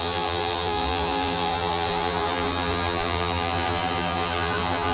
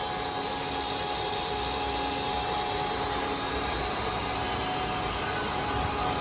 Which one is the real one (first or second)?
second